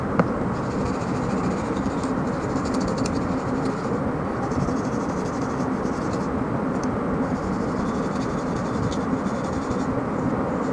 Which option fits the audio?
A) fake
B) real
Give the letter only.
B